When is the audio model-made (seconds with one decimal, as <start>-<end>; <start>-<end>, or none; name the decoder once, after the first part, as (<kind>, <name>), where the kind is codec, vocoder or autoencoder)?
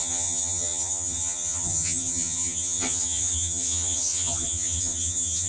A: 0.0-5.5 (vocoder, HiFi-GAN)